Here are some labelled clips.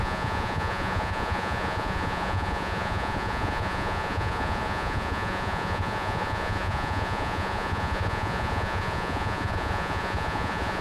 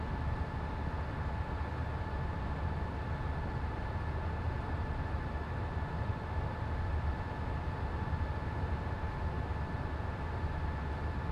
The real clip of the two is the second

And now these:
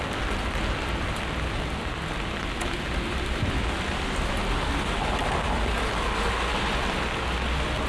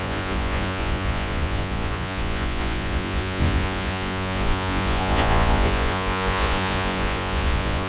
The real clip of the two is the first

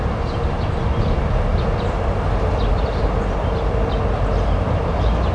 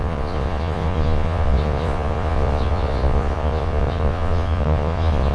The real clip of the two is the first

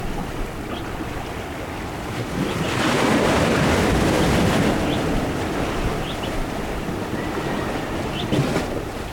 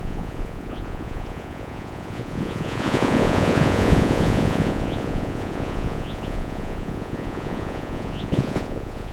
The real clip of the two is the first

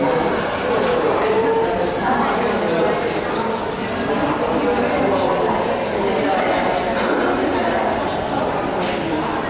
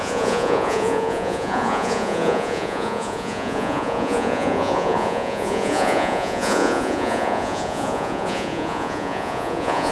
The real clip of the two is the first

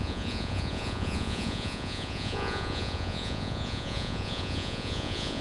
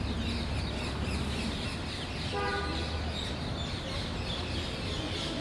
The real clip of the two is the second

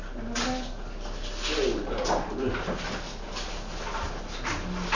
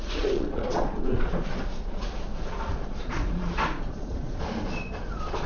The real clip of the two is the first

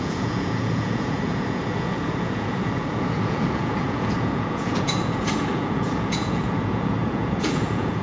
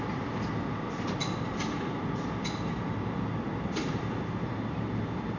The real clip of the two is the second